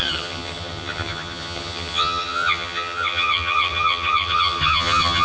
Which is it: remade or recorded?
remade